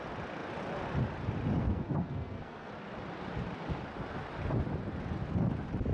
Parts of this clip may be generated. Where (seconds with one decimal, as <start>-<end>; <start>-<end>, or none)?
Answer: 1.6-2.7